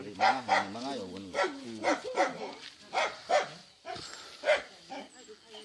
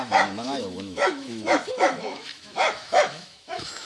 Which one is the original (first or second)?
first